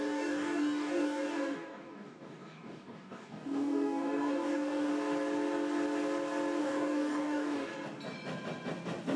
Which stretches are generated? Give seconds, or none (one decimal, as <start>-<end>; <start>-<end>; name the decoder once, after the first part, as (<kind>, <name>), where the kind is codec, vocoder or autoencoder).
0.0-4.9 (codec, DAC); 6.6-7.7